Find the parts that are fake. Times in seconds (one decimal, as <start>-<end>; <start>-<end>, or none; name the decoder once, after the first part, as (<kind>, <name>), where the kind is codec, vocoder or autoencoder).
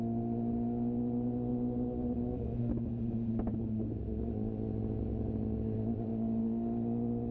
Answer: none